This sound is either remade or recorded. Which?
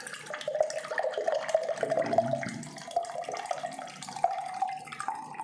recorded